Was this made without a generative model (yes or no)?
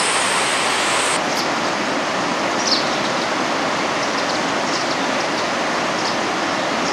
yes